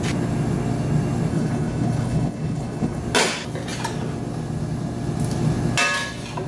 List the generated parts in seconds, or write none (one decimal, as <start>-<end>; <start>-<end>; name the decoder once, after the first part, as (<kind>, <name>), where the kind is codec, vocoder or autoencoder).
1.3-3.0 (codec, HILCodec)